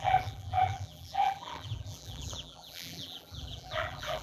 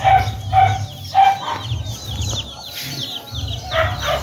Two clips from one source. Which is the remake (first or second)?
first